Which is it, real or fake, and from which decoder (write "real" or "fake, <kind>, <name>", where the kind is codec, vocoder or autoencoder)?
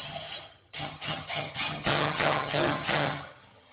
fake, vocoder, HiFi-GAN